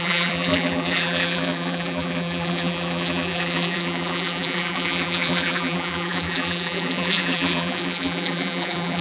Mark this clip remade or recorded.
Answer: remade